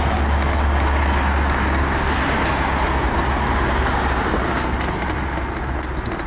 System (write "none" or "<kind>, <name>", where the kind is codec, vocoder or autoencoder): none